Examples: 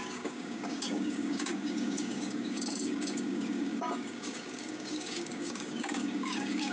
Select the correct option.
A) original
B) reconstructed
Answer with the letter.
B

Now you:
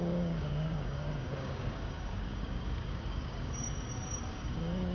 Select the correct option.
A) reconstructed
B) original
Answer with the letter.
A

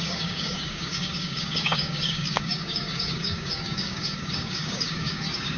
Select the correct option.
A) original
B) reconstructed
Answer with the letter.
B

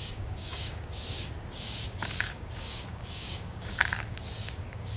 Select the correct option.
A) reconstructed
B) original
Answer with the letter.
A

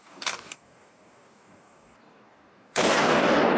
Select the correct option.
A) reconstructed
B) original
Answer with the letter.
A